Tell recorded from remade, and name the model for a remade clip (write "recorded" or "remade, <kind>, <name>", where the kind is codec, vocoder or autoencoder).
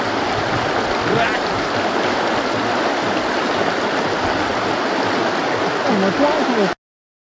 recorded